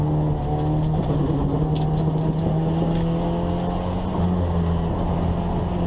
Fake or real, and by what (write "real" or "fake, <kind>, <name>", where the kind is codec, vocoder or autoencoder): real